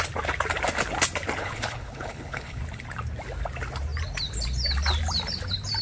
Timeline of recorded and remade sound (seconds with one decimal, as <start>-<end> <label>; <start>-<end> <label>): 0.0-1.4 recorded; 1.4-2.6 remade; 2.6-5.8 recorded